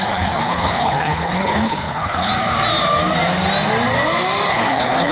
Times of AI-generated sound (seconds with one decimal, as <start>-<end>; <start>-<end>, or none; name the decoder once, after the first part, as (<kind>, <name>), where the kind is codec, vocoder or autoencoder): 0.0-2.3 (codec, HILCodec); 4.5-5.1